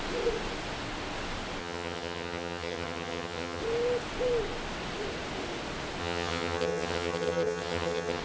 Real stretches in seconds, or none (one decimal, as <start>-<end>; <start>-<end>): 0.0-1.6; 3.6-6.0